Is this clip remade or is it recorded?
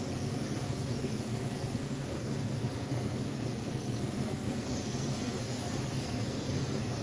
remade